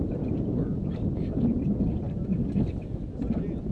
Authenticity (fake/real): real